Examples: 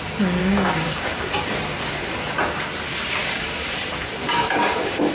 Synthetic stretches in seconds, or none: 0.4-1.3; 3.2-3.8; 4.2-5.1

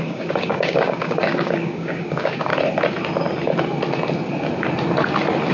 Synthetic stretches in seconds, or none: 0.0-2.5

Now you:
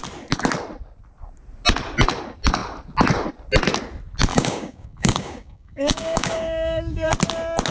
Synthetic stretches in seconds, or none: 4.3-7.1

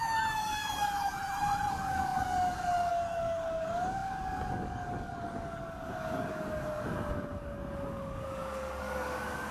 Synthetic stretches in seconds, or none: 0.0-1.2; 1.7-9.5

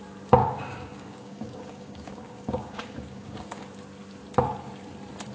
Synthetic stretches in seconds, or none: 0.4-3.6